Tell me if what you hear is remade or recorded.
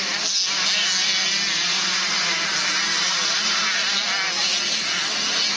recorded